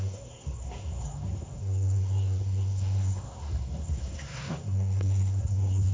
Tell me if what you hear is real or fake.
fake